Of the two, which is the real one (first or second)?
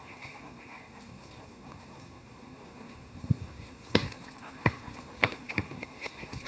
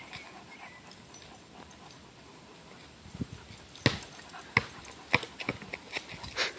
second